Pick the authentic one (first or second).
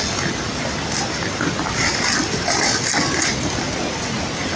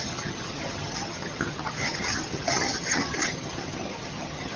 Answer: first